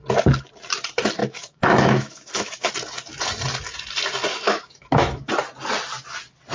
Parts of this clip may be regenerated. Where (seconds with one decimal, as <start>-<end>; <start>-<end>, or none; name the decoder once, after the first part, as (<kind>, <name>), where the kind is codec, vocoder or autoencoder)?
1.2-2.7 (autoencoder, DAC-VAE); 4.3-5.3